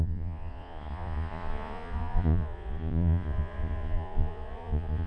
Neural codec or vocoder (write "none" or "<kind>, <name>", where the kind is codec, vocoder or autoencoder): vocoder, Vocos